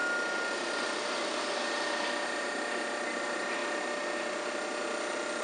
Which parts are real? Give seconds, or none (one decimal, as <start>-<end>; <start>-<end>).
0.0-5.4